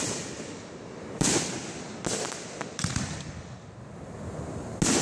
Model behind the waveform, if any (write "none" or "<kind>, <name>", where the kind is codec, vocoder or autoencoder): none